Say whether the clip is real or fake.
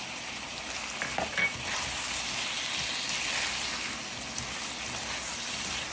real